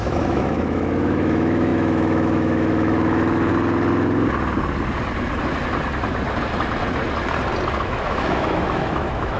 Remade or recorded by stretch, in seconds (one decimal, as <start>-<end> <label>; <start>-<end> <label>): 0.0-3.5 remade; 3.5-7.8 recorded; 7.8-9.4 remade